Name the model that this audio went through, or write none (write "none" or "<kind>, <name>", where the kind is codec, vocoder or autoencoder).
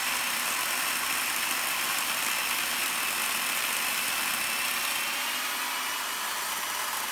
none